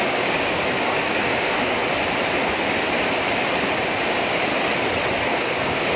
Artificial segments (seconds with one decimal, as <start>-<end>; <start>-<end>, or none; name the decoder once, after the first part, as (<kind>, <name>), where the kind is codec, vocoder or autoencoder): 0.0-1.8 (codec, DAC); 3.9-4.5; 5.4-6.0